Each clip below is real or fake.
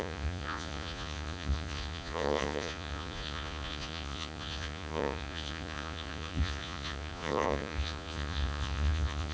fake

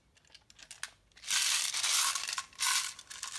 real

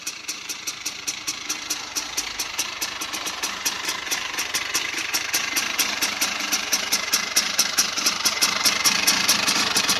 fake